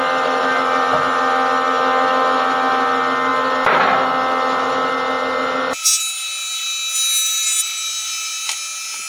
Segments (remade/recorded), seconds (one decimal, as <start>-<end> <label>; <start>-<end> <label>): 0.0-9.1 recorded